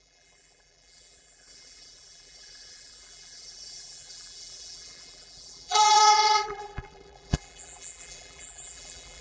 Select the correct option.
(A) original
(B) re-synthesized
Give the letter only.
B